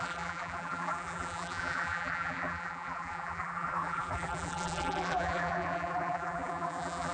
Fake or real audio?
fake